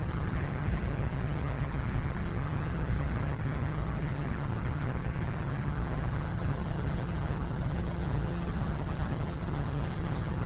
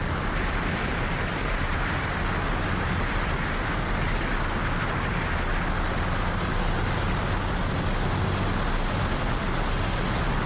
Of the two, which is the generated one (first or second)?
first